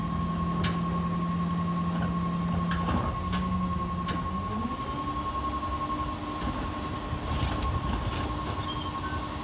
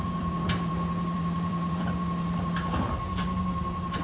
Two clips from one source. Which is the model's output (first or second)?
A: second